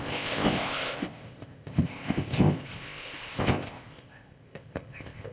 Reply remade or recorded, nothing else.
remade